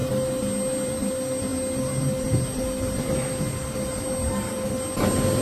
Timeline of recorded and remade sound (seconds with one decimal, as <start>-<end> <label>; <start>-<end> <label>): 0.0-5.4 recorded